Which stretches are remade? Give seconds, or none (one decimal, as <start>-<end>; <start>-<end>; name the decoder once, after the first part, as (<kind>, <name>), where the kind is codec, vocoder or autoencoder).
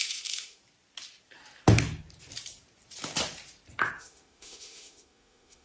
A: 0.0-0.6 (autoencoder, DAC-VAE); 4.0-5.6